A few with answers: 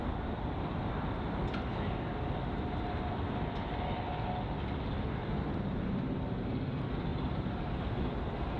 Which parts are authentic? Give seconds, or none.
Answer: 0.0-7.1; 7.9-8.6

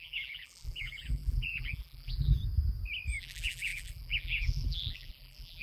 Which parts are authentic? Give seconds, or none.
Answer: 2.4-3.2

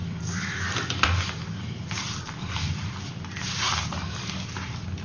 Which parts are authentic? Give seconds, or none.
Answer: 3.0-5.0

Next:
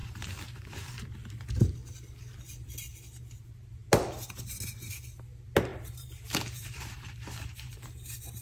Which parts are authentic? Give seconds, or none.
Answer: 1.2-5.7; 7.9-8.4